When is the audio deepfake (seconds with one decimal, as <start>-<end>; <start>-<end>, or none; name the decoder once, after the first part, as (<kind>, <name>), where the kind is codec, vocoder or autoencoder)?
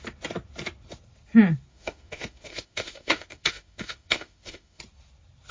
1.7-4.8 (autoencoder, DAC-VAE)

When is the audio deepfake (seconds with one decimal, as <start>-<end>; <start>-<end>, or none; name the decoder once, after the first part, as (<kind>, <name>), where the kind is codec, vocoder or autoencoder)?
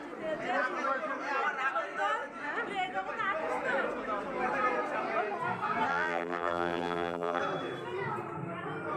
5.9-7.4 (vocoder, BigVGAN v2)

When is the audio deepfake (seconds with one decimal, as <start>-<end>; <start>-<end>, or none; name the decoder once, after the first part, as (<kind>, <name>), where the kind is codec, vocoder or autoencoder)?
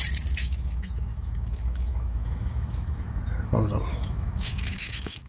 0.4-3.2 (autoencoder, DAC-VAE); 3.9-5.3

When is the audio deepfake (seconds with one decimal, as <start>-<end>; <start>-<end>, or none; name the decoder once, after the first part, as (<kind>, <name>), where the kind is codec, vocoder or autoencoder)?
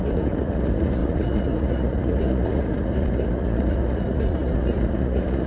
0.0-5.5 (vocoder, Vocos)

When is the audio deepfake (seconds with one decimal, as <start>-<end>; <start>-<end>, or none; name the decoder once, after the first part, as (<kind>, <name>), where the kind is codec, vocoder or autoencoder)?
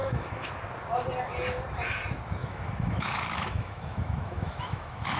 0.0-0.5 (autoencoder, DAC-VAE); 2.4-5.2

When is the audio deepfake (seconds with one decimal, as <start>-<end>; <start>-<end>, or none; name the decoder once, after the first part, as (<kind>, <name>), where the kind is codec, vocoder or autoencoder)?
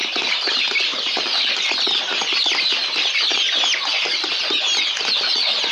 0.0-0.5 (vocoder, BigVGAN v2); 0.9-1.5